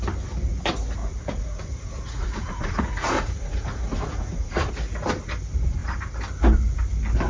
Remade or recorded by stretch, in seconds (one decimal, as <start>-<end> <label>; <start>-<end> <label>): 0.0-1.0 recorded; 1.0-4.7 remade; 4.7-7.3 recorded